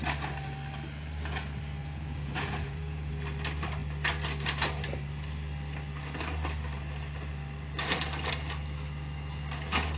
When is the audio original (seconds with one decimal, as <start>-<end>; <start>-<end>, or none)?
0.0-1.8; 3.1-10.0

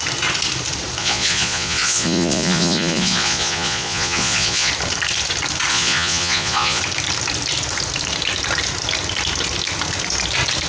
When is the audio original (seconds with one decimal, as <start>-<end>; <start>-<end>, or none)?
0.0-1.0; 4.7-5.7; 6.8-10.7